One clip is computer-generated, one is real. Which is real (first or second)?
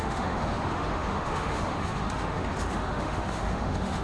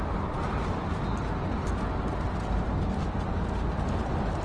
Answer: second